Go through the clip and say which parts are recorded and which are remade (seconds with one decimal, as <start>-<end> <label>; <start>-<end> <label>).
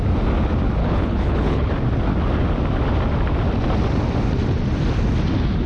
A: 0.0-0.8 recorded; 0.8-1.7 remade; 1.7-5.7 recorded